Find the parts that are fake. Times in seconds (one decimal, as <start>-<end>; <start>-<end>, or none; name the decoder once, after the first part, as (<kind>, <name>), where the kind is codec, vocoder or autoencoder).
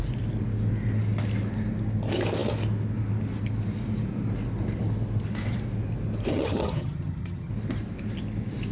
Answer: 6.3-7.5 (vocoder, HiFi-GAN)